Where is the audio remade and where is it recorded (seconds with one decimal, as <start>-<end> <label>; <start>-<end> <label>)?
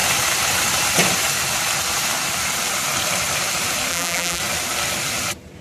0.0-3.9 recorded; 3.9-4.4 remade; 4.4-5.6 recorded